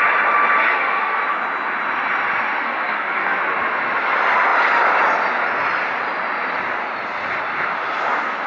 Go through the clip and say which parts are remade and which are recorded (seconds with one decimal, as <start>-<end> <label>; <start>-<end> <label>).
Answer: 0.0-0.6 recorded; 0.6-1.2 remade; 1.2-2.6 recorded; 2.6-3.4 remade; 3.4-8.5 recorded